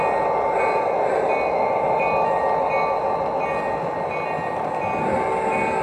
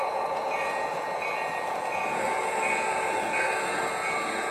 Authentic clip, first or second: first